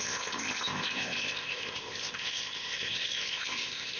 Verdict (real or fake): fake